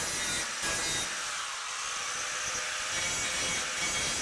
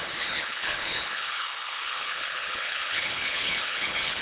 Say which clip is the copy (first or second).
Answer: second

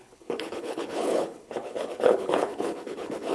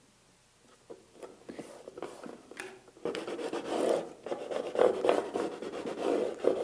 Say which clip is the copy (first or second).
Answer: first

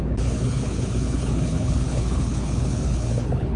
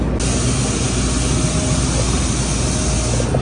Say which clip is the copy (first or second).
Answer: first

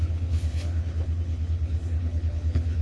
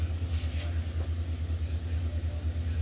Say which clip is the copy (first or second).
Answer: first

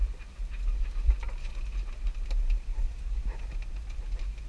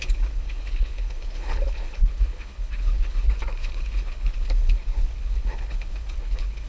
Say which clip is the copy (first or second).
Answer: second